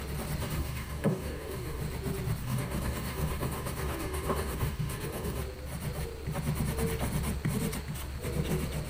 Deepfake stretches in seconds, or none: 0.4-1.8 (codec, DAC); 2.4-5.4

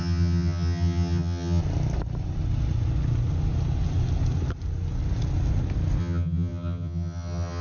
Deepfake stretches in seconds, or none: 0.0-1.6 (vocoder, HiFi-GAN); 6.0-7.6

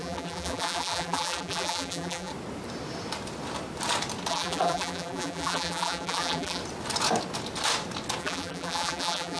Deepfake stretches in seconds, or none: 0.0-2.3 (vocoder, BigVGAN v2); 4.3-6.6; 8.2-9.4

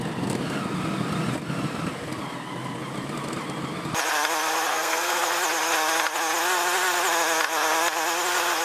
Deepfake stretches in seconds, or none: 4.7-5.2 (codec, SNAC)

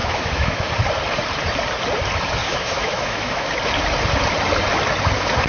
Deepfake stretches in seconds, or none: 0.0-0.7 (autoencoder, DAC-VAE); 2.4-3.5

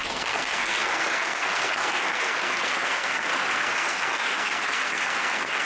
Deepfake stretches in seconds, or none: 0.0-5.6 (codec, SNAC)